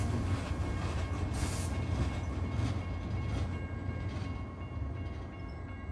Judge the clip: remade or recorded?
recorded